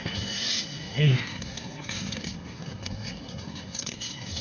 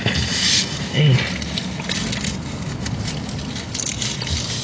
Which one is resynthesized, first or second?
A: first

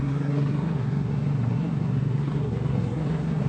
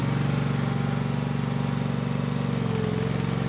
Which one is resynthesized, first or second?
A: first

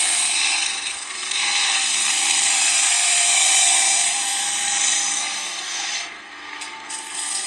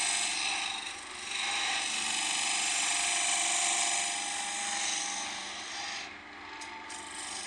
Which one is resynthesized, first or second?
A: first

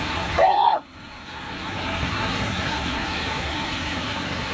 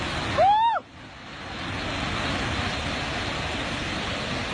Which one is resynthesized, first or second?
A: first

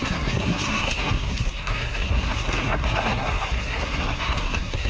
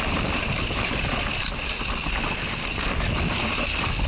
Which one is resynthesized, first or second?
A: first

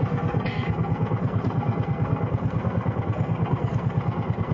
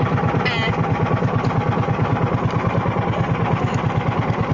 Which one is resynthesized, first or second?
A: first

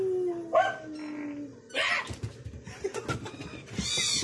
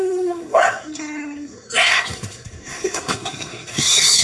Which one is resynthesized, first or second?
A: second